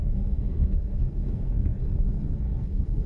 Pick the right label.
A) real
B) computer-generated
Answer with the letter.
B